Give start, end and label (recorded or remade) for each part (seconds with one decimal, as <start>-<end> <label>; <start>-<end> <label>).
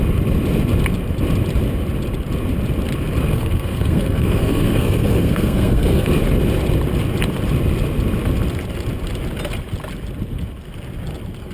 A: 0.0-3.3 recorded; 3.3-6.1 remade; 6.1-11.5 recorded